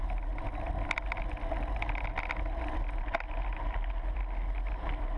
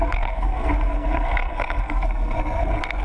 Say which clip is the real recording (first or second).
first